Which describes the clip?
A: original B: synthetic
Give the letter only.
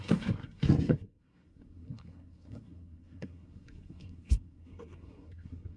B